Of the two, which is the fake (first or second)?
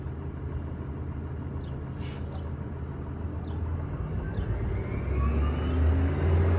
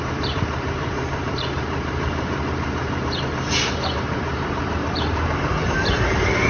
second